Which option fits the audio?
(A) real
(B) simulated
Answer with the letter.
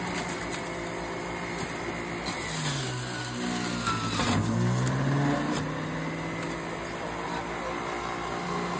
A